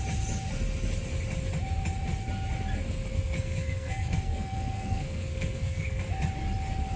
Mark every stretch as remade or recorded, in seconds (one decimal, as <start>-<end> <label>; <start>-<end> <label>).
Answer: 0.0-3.1 recorded; 3.1-6.0 remade; 6.0-7.0 recorded